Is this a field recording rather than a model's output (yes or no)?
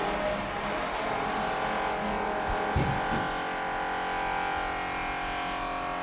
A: yes